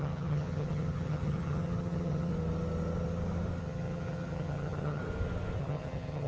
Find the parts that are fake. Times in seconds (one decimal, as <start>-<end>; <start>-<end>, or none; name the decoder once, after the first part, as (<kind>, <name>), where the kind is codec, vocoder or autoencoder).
0.0-2.3 (vocoder, HiFi-GAN); 3.6-5.0; 5.6-6.3